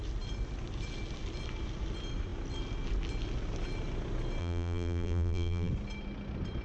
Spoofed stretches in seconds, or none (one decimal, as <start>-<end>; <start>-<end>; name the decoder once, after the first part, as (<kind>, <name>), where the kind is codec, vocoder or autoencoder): 4.4-5.7 (vocoder, BigVGAN v2)